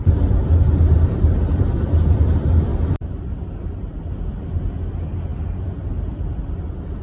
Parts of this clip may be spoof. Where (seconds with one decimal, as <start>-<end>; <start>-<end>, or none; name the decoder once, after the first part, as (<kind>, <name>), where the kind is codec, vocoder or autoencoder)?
0.0-2.7 (vocoder, BigVGAN v2); 4.0-7.0